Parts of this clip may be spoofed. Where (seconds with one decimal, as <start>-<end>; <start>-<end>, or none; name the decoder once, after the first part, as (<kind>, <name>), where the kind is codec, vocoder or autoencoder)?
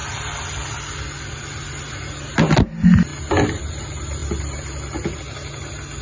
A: none